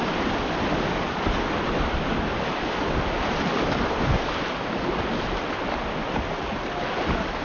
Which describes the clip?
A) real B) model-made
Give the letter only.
A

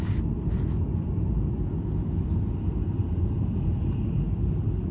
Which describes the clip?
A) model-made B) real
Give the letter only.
B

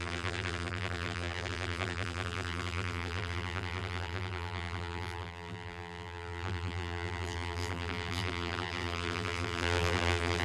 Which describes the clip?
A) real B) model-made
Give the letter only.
B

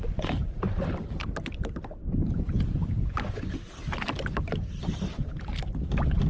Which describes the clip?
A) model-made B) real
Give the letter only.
B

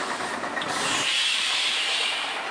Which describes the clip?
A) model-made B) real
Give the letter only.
A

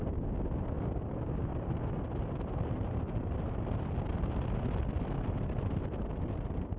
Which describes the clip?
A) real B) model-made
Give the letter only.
A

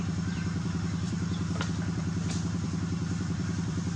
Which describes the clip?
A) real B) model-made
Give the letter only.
B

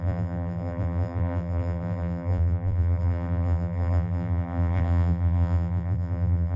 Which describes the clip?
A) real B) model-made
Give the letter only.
B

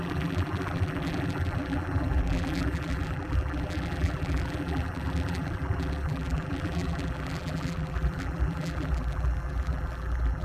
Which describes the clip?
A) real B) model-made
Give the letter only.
B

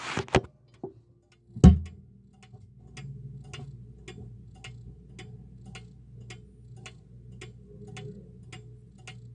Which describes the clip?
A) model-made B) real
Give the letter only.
B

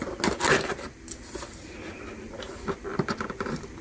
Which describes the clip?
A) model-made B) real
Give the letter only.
B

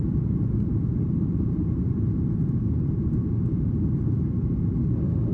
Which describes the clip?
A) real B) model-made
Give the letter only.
B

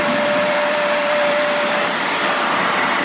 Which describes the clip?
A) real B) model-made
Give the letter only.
B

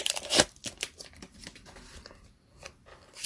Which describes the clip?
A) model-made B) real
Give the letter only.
A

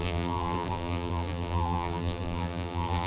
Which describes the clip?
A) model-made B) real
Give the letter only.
A